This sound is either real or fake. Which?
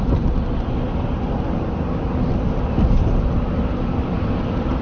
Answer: real